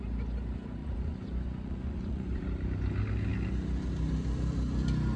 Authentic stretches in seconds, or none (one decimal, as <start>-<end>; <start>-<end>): 0.0-0.8; 2.4-5.2